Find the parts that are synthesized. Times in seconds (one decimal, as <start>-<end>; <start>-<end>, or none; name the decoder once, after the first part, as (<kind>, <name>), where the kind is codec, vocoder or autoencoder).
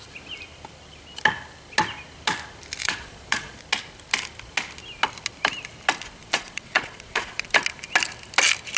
2.8-3.6 (vocoder, Vocos); 6.2-7.5